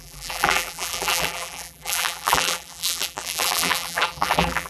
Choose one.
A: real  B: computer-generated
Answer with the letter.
B